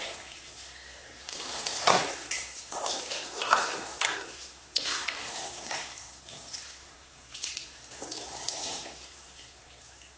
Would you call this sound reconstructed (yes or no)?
yes